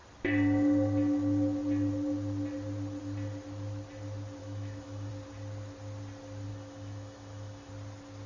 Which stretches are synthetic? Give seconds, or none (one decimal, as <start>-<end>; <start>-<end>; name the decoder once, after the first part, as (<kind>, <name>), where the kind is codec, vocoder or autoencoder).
4.4-5.1 (autoencoder, DAC-VAE); 6.5-7.7